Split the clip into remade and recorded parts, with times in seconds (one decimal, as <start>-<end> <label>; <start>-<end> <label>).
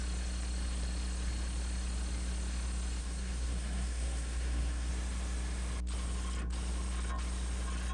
0.0-3.0 recorded; 3.0-4.9 remade; 4.9-7.9 recorded